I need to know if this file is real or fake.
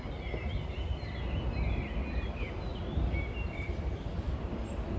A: real